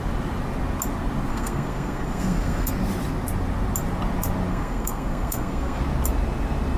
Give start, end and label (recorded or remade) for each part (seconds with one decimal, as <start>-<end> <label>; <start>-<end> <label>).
0.0-1.3 recorded; 1.3-2.7 remade; 2.7-4.5 recorded; 4.5-5.8 remade; 5.8-6.8 recorded